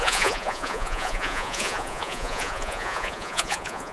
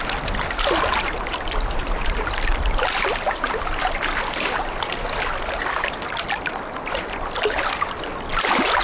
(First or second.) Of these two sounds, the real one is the second